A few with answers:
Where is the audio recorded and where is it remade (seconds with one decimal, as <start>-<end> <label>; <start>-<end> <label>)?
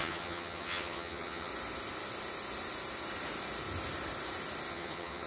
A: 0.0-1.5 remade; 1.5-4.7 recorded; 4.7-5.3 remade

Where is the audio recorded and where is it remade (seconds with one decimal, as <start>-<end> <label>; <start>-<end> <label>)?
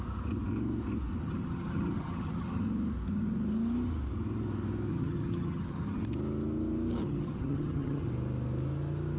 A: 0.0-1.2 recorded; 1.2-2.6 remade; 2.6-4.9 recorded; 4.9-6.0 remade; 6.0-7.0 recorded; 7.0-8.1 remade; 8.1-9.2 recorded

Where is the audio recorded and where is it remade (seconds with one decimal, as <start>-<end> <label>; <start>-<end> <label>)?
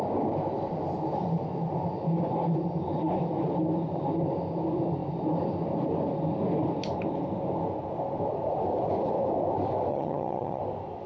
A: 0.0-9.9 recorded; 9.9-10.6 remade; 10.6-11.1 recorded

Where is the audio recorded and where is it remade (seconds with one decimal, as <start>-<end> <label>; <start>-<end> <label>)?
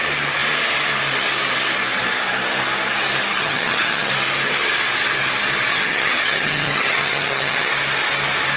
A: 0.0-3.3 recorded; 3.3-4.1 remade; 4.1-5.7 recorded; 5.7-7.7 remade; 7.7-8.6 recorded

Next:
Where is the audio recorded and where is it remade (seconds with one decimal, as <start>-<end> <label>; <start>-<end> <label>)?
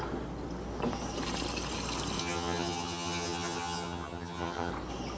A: 0.0-2.2 recorded; 2.2-4.7 remade; 4.7-5.2 recorded